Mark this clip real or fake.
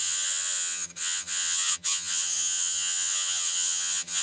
fake